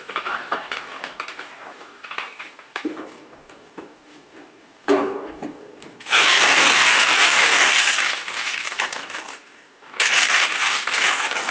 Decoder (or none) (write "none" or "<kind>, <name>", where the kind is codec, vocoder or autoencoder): codec, DAC